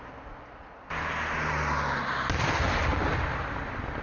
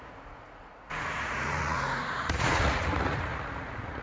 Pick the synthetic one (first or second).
second